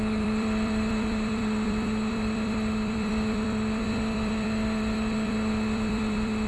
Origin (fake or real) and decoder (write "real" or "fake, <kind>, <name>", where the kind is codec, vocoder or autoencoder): fake, vocoder, BigVGAN v2